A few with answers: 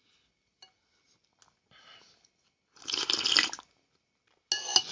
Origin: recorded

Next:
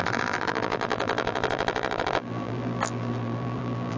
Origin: remade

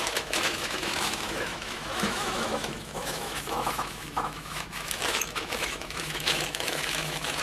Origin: remade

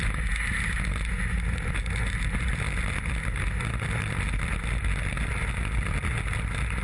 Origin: recorded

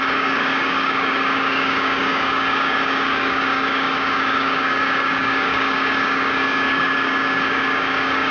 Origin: remade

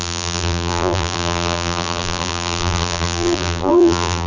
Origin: remade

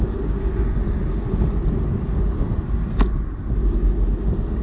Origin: recorded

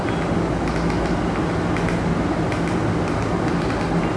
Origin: recorded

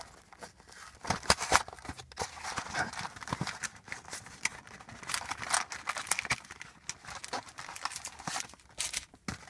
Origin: recorded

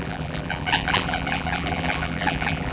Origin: remade